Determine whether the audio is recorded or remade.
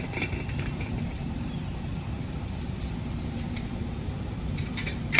remade